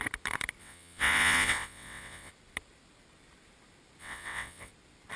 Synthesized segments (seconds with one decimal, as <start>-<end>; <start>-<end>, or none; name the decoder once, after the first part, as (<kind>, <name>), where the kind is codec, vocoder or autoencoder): 0.6-2.3 (vocoder, WaveNeXt); 4.0-4.7